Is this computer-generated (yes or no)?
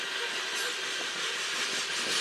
no